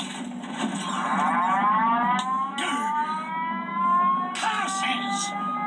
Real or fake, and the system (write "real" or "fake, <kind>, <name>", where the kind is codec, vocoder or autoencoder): real